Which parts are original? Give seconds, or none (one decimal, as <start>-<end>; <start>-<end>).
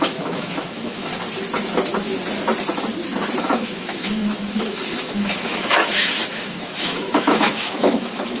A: 1.1-3.4